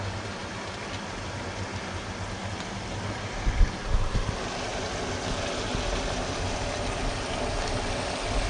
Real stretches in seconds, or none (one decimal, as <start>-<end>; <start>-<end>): 0.0-8.5